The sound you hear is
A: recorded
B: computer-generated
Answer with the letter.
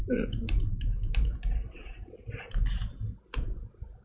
B